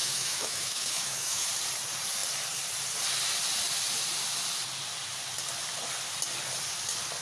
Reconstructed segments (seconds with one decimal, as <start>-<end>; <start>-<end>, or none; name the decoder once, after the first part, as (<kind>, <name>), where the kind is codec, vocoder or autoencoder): 0.0-1.5 (autoencoder, DAC-VAE)